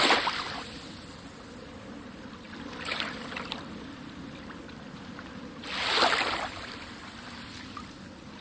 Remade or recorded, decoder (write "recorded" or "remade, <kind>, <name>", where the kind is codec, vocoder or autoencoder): recorded